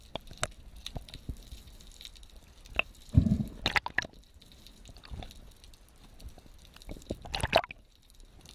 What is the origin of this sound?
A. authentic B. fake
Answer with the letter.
A